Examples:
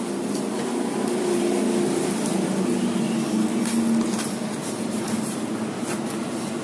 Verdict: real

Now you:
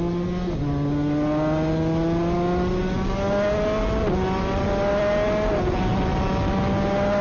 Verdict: real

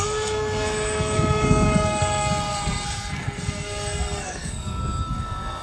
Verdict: fake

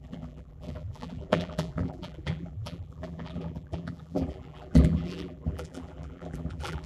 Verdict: fake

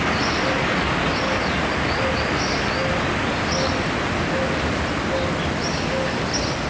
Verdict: real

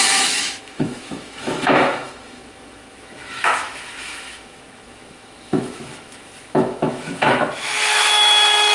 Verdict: fake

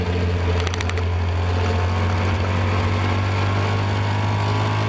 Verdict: real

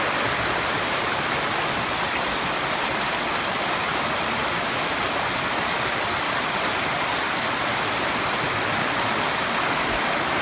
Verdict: real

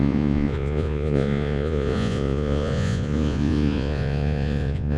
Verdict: fake